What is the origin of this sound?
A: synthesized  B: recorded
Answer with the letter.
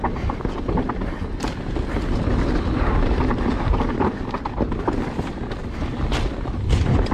B